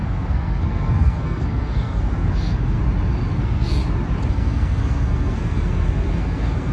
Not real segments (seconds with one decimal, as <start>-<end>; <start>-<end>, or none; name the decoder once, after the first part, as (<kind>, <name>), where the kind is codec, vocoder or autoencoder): 0.0-2.8 (codec, SNAC); 3.4-3.8; 4.3-6.7